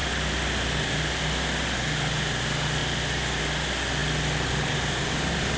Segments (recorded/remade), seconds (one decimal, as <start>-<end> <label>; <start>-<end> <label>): 0.0-5.6 recorded